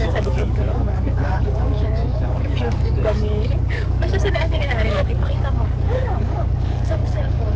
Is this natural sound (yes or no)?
no